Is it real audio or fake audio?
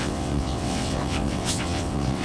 fake